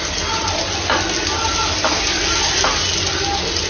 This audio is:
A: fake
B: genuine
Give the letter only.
B